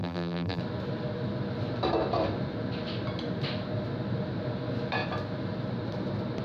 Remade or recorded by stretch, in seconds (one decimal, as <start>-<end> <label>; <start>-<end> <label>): 0.0-0.6 remade; 0.6-6.4 recorded